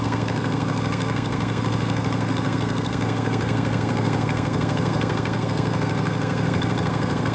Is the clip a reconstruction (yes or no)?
yes